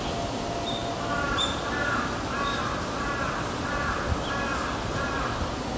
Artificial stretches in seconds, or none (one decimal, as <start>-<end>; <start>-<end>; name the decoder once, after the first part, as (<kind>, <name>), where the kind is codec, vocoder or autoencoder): 2.7-3.8 (vocoder, BigVGAN v2); 4.5-5.3